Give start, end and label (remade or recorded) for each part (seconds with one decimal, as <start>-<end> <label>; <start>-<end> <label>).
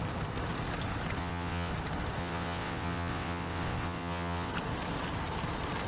0.0-1.2 recorded; 1.2-1.7 remade; 1.7-2.2 recorded; 2.2-4.5 remade; 4.5-5.9 recorded